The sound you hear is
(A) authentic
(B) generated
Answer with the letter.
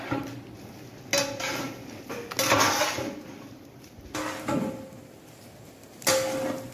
A